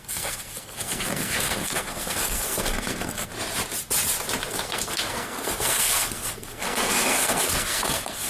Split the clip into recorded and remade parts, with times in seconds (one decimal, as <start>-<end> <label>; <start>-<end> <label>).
0.0-3.3 remade; 3.3-4.5 recorded; 4.5-8.3 remade